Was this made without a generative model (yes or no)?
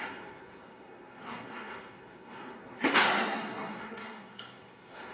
no